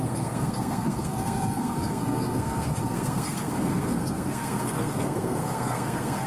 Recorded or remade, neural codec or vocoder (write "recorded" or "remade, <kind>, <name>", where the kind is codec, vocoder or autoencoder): remade, codec, SNAC